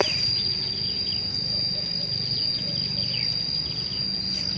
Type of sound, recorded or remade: recorded